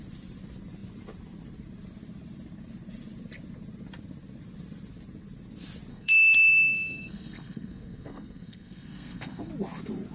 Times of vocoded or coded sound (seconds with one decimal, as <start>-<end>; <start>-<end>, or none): 5.9-9.5